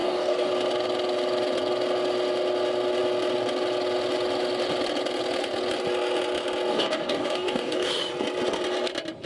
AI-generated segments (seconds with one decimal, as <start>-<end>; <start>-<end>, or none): 0.0-0.5; 6.7-7.9